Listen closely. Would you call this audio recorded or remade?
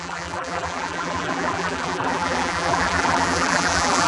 remade